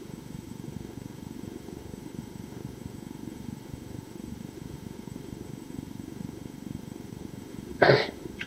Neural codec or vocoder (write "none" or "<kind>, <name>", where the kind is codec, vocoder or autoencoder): autoencoder, DAC-VAE